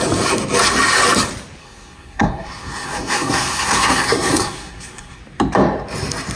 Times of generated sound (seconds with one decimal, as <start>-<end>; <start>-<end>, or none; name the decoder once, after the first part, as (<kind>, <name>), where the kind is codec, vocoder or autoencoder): 1.6-5.2 (codec, SNAC)

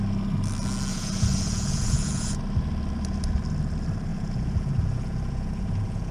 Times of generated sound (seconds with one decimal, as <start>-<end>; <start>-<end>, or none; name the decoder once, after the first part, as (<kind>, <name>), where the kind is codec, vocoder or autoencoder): 0.9-2.4 (vocoder, Vocos); 4.1-6.1

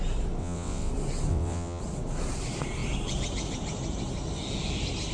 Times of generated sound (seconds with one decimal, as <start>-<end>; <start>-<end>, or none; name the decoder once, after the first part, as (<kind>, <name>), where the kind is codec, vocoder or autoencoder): 0.4-0.9 (vocoder, WaveNeXt); 1.3-1.8

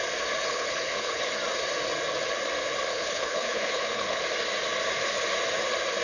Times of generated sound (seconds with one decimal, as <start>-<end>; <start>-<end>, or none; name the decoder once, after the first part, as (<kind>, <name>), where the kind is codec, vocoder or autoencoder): 0.5-1.3 (codec, HILCodec); 2.9-4.2

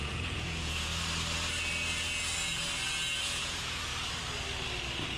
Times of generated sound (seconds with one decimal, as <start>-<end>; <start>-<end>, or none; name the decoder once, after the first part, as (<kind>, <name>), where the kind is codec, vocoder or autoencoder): 0.0-0.9 (vocoder, Vocos); 3.4-3.9

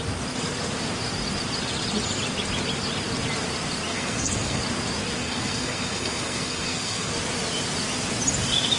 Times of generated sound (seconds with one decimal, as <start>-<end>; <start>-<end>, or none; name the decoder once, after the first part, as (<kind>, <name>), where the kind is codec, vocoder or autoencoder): 3.9-4.6 (codec, SNAC); 5.2-7.1

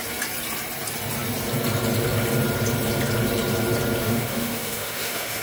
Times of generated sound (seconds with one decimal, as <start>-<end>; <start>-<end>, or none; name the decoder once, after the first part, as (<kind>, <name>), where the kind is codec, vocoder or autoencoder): 4.0-5.4 (autoencoder, DAC-VAE)

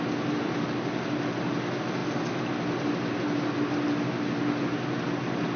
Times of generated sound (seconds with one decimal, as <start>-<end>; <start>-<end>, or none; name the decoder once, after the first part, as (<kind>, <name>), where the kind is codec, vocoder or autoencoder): none